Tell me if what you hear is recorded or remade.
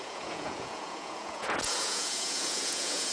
remade